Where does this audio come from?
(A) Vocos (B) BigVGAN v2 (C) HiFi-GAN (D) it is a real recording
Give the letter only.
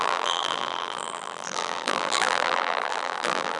B